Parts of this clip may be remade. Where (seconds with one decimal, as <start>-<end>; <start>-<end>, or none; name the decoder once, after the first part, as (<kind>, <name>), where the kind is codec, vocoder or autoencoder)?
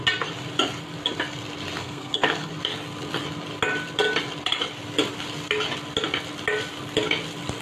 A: 1.8-2.5 (codec, SNAC)